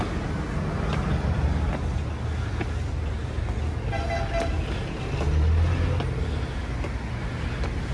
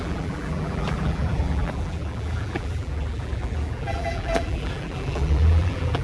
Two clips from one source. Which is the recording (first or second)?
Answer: first